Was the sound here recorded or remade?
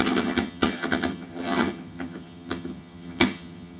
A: remade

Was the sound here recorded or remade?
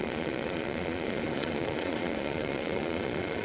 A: remade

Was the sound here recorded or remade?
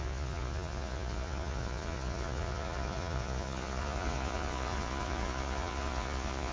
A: remade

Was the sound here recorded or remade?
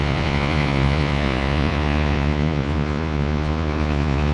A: remade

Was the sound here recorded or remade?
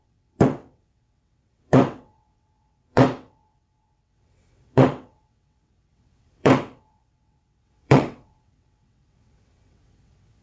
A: remade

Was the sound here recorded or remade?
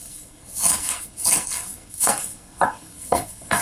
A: remade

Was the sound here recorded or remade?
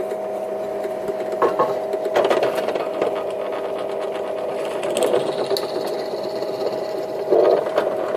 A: recorded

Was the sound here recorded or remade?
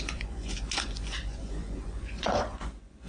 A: remade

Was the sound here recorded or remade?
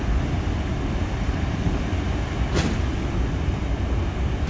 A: recorded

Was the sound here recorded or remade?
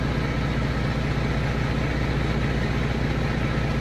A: recorded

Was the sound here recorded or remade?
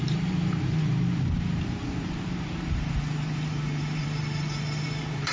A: remade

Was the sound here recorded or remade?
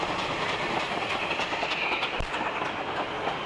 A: recorded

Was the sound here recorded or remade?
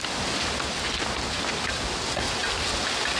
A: recorded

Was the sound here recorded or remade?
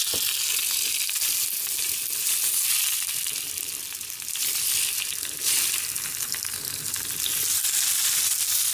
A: recorded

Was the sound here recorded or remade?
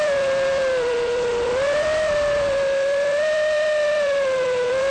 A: remade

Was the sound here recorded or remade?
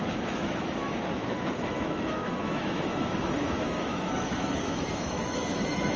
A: remade